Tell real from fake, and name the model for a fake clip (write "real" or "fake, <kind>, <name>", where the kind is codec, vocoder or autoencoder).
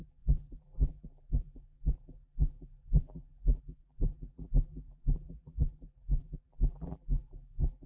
fake, vocoder, BigVGAN v2